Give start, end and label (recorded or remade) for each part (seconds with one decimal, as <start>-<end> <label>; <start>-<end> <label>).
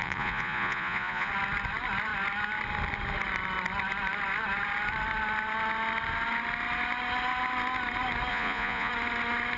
0.0-1.3 remade; 1.3-8.3 recorded; 8.3-8.9 remade; 8.9-9.6 recorded